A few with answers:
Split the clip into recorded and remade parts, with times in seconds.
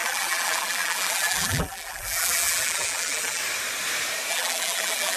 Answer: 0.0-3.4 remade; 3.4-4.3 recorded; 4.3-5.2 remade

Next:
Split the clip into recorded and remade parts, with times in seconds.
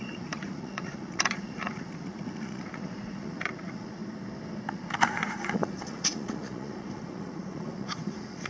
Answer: 0.0-4.0 remade; 4.0-4.7 recorded; 4.7-8.5 remade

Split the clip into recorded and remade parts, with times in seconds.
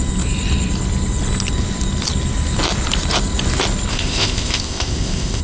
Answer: 0.0-3.9 recorded; 3.9-5.4 remade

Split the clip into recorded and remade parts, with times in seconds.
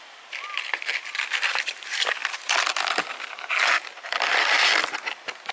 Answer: 0.0-5.5 recorded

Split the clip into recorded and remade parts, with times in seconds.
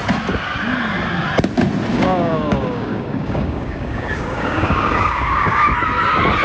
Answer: 0.0-1.9 recorded; 1.9-5.7 remade; 5.7-6.4 recorded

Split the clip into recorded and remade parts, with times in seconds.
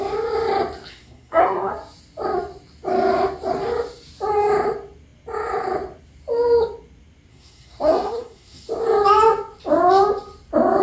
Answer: 0.0-0.9 recorded; 0.9-1.7 remade; 1.7-7.3 recorded; 7.3-8.7 remade; 8.7-10.8 recorded